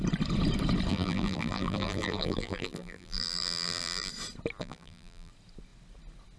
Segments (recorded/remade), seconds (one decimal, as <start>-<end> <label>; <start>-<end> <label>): 0.0-0.9 recorded; 0.9-4.1 remade; 4.1-4.6 recorded; 4.6-5.3 remade; 5.3-6.4 recorded